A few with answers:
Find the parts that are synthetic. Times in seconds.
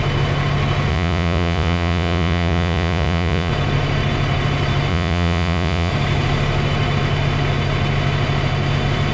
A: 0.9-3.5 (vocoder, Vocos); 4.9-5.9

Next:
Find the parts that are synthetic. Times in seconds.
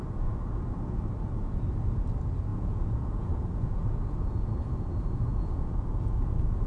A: 2.5-6.7 (vocoder, Vocos)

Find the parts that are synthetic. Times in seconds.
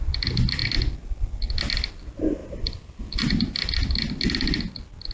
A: none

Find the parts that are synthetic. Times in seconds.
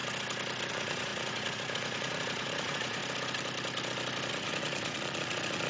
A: 0.7-3.0 (vocoder, Vocos); 4.3-5.7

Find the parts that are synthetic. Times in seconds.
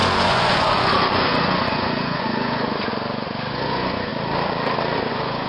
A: 0.0-2.9 (vocoder, Vocos); 3.5-4.1; 5.1-5.5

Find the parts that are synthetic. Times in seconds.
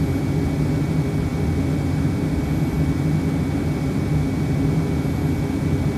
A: none